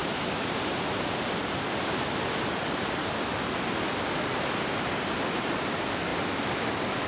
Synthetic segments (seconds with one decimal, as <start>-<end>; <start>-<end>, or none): none